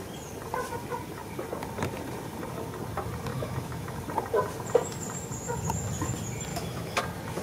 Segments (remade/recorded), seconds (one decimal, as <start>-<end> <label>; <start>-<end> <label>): 0.0-3.3 recorded; 3.3-4.0 remade; 4.0-6.5 recorded; 6.5-7.0 remade; 7.0-7.4 recorded